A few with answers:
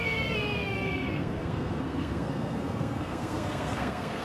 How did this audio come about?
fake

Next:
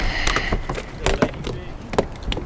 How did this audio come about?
real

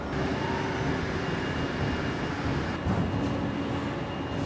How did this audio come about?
real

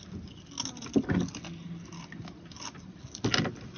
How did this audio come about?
real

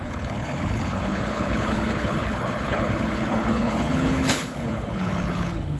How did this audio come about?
fake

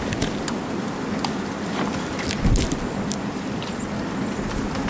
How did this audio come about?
fake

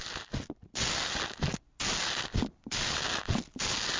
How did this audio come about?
real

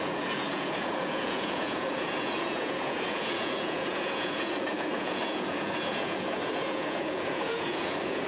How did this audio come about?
fake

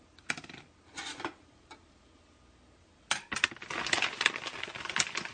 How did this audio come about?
real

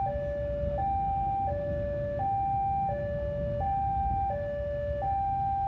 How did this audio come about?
real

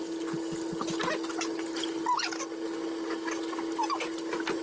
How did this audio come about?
real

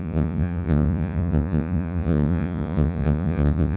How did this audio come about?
fake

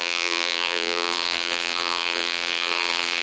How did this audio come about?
fake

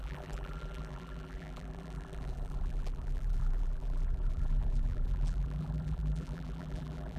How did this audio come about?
fake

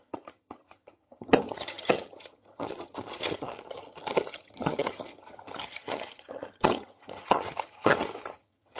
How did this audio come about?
fake